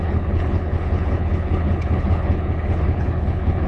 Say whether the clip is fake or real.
fake